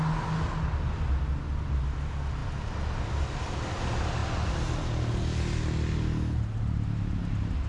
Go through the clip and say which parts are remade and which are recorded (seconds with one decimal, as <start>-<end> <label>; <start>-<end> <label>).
0.0-7.7 recorded